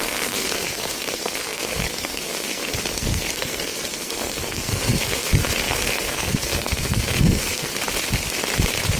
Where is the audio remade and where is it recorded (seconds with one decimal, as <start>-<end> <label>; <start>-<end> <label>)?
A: 0.0-7.7 remade; 7.7-9.0 recorded